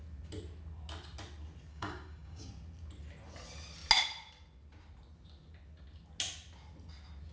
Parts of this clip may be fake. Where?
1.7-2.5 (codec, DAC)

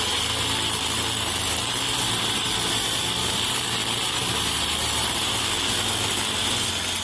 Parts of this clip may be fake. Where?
none